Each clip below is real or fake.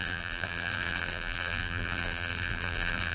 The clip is fake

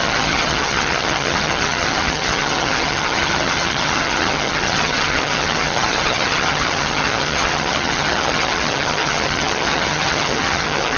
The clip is fake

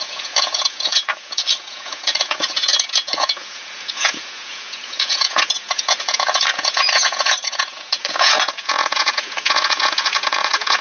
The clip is fake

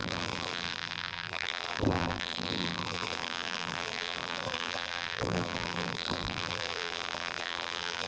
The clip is fake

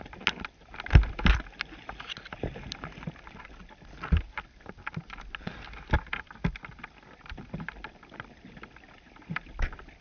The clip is real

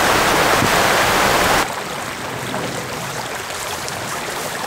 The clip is real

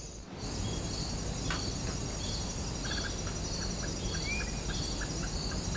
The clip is real